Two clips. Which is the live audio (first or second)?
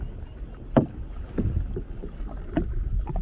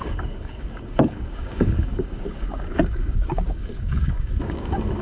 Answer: first